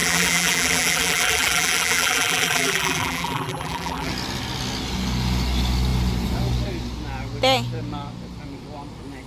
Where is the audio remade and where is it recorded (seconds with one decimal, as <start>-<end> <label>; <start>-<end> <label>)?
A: 0.0-4.1 remade; 4.1-9.3 recorded